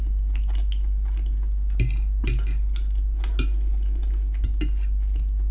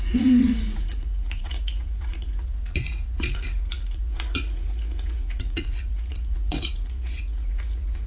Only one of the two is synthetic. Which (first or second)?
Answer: second